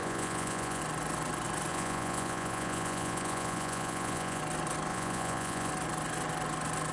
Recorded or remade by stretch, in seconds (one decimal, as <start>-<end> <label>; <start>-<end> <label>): 0.0-0.8 remade; 0.8-1.7 recorded; 1.7-4.4 remade; 4.4-4.9 recorded; 4.9-5.7 remade; 5.7-6.9 recorded